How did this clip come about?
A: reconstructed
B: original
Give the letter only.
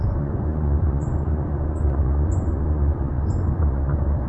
A